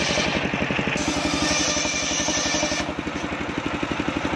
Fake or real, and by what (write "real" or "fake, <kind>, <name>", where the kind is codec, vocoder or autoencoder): real